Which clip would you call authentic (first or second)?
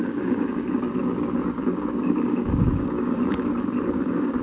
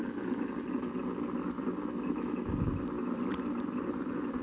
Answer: second